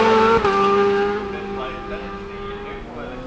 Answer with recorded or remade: recorded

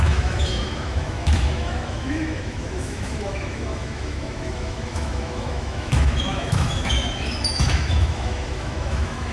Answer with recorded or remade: remade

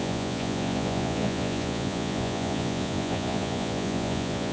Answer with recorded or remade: remade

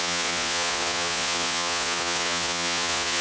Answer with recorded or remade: remade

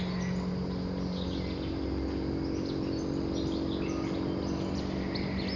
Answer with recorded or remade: recorded